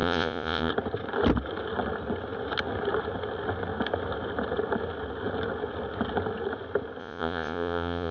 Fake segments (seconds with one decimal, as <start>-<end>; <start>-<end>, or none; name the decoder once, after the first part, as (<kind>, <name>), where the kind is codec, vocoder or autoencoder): 0.0-0.7 (vocoder, Vocos); 7.0-8.1